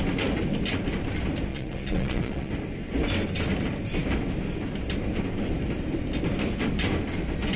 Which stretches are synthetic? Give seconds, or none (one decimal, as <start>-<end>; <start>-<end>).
1.5-2.5